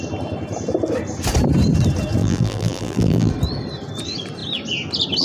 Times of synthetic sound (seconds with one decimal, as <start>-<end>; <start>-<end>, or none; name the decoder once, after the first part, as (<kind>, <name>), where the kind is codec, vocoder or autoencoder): 2.2-3.3 (vocoder, BigVGAN v2)